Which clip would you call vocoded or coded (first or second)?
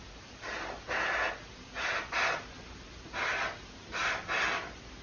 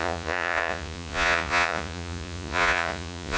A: second